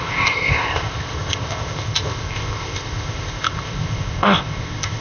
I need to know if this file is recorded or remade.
remade